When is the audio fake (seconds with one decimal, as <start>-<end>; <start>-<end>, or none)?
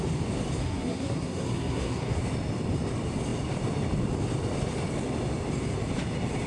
0.6-2.2